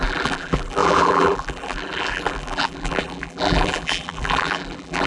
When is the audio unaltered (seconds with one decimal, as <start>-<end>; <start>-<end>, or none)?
none